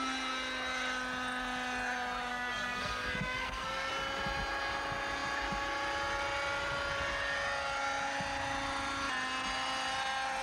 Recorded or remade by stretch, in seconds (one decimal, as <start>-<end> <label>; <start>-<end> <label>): 0.0-2.3 recorded; 2.3-3.9 remade; 3.9-10.4 recorded